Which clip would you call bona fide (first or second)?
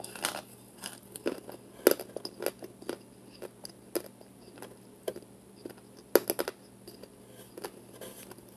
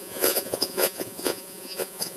first